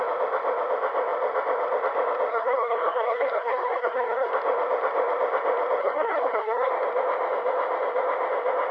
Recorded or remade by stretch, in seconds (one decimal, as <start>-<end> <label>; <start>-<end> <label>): 0.0-2.3 recorded; 2.3-4.3 remade; 4.3-5.8 recorded; 5.8-6.7 remade; 6.7-8.7 recorded